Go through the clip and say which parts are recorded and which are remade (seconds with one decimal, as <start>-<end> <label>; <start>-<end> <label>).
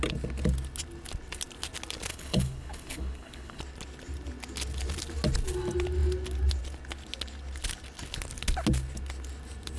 0.0-2.1 recorded; 2.1-3.6 remade; 3.6-9.8 recorded